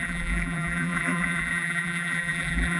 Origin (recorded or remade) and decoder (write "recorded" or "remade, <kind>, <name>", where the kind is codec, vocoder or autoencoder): remade, vocoder, BigVGAN v2